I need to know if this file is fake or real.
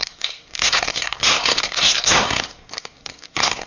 fake